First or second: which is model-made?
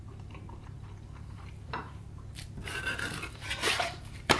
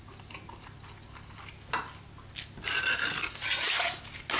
first